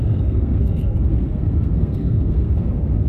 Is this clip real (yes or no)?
no